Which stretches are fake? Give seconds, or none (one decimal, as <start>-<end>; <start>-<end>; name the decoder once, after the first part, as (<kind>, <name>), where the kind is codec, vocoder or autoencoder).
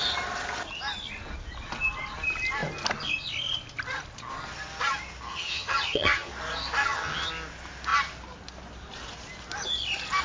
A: 5.3-6.3 (vocoder, HiFi-GAN); 6.8-7.3